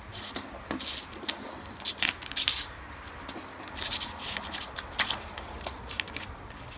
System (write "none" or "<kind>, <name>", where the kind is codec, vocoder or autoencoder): none